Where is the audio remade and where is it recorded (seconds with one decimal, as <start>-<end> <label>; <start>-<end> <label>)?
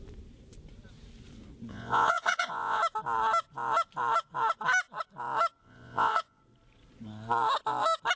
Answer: 0.0-1.7 recorded; 1.7-2.8 remade; 2.8-5.6 recorded; 5.6-6.4 remade; 6.4-8.2 recorded